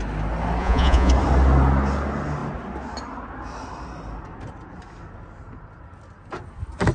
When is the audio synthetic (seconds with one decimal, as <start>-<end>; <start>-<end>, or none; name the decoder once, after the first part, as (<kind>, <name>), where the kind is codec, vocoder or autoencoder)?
0.6-1.1 (vocoder, Vocos)